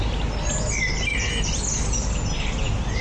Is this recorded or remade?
recorded